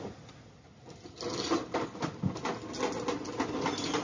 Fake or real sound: real